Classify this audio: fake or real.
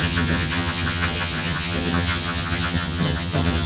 fake